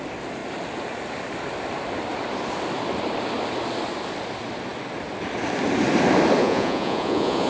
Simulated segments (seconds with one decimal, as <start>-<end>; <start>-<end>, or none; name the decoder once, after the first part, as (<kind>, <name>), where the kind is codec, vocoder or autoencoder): 6.4-7.5 (vocoder, Vocos)